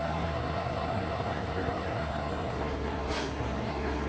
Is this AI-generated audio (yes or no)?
yes